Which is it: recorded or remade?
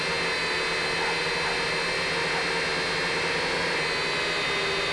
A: recorded